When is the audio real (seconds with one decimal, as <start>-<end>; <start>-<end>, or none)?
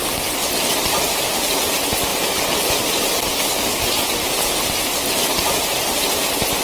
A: 0.0-6.6